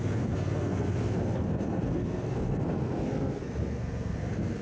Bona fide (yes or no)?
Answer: no